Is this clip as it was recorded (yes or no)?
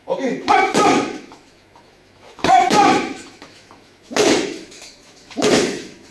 no